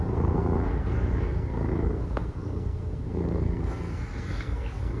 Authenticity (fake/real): fake